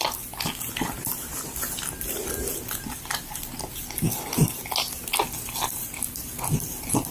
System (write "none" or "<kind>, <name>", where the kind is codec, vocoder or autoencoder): none